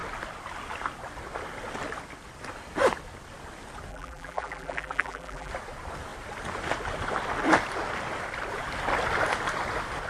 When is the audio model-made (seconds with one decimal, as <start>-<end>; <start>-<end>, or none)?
3.9-5.5